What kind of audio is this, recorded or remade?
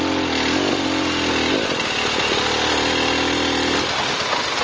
recorded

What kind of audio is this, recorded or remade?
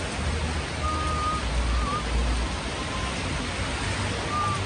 recorded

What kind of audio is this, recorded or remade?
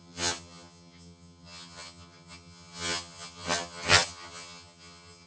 remade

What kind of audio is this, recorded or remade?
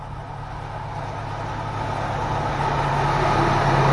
recorded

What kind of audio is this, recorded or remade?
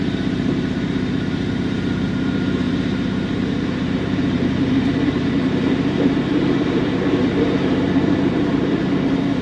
remade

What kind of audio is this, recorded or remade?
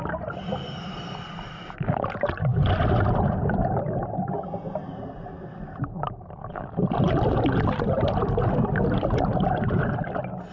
recorded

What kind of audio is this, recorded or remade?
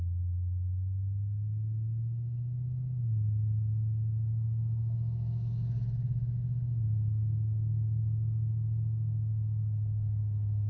remade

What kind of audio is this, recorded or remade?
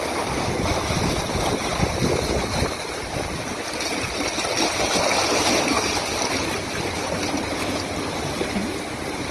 recorded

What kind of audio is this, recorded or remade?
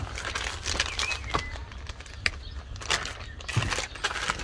recorded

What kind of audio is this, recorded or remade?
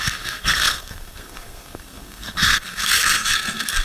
remade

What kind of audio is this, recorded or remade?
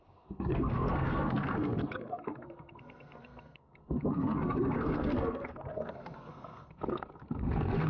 remade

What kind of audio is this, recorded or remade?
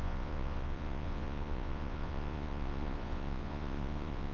remade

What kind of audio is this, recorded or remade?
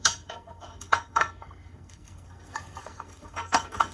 remade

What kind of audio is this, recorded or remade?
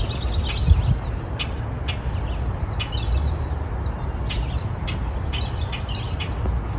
recorded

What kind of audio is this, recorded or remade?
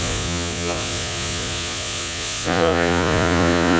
remade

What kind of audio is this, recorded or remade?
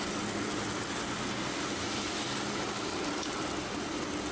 recorded